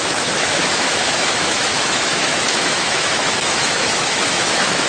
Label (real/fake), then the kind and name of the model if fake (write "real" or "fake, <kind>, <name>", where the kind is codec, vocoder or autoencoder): fake, autoencoder, DAC-VAE